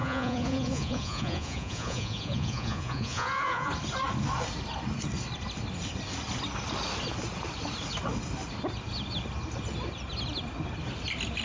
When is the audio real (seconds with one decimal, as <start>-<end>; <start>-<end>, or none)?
3.7-11.4